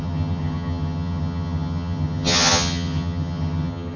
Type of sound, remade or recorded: remade